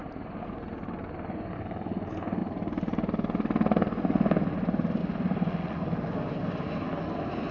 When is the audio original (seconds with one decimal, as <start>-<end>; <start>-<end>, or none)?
0.7-2.4; 4.0-5.0; 5.5-7.5

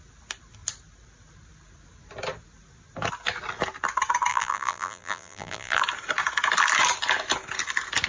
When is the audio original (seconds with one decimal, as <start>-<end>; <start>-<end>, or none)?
0.0-4.3; 5.8-8.1

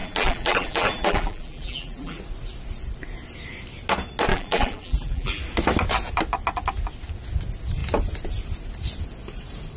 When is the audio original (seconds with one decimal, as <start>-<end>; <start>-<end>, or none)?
2.2-4.3; 5.4-9.8

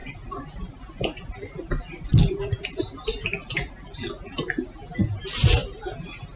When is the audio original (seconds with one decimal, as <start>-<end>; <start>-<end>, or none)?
3.7-6.4

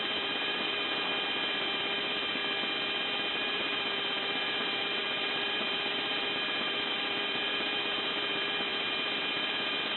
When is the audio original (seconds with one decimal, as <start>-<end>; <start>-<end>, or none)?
1.1-1.8; 2.4-3.3